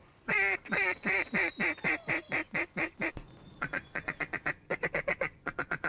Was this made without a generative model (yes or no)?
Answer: no